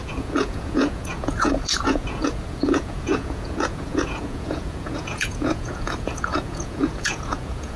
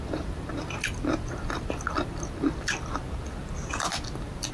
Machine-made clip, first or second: first